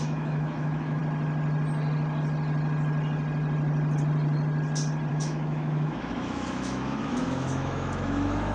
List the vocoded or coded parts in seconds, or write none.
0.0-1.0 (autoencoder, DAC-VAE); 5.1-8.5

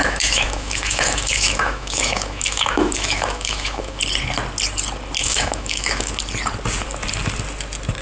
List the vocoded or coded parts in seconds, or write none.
0.0-4.0 (autoencoder, DAC-VAE); 5.2-6.1